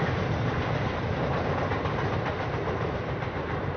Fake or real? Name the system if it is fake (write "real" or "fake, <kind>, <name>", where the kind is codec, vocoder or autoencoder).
fake, vocoder, BigVGAN v2